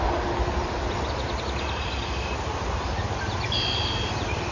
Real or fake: real